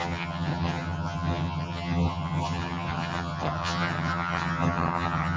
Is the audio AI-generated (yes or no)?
yes